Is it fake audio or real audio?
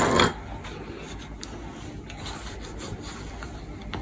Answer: real